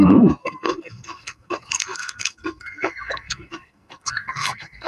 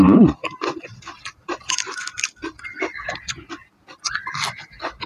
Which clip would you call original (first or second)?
second